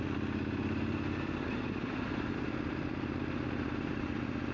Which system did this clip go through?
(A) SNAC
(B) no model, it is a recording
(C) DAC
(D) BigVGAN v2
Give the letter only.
D